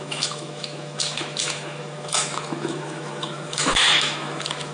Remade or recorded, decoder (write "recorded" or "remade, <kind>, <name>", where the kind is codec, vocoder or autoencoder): remade, autoencoder, DAC-VAE